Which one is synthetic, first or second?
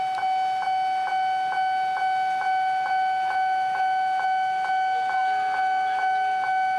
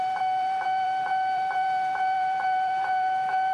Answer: second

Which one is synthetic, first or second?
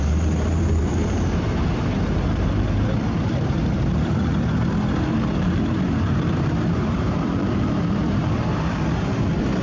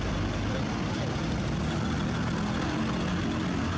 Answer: first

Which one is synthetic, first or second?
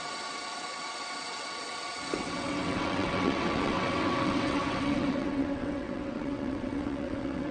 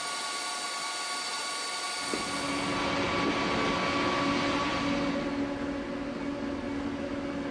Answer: first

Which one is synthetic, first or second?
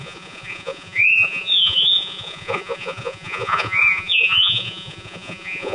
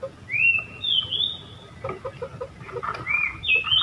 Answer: first